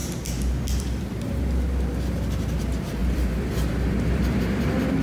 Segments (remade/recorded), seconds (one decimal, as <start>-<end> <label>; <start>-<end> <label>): 0.0-3.0 recorded; 3.0-3.9 remade; 3.9-5.0 recorded